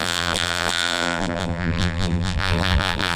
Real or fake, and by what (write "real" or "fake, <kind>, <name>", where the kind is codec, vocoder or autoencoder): fake, vocoder, BigVGAN v2